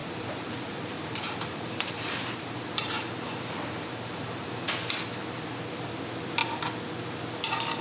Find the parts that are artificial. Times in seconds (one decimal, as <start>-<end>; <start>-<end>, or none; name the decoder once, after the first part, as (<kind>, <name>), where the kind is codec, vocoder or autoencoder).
0.0-4.7 (vocoder, BigVGAN v2)